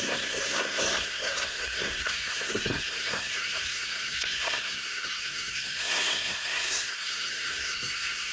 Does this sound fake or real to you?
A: fake